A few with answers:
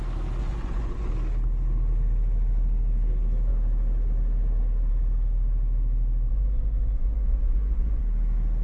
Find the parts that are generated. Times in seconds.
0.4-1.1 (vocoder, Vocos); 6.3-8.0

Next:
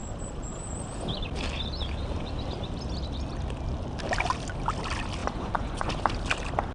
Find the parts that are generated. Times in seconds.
5.2-5.9 (vocoder, Vocos)